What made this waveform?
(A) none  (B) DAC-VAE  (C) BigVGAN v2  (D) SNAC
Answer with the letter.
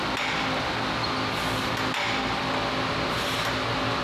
A